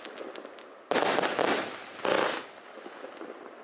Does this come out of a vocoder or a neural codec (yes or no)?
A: no